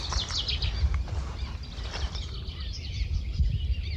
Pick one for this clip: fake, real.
real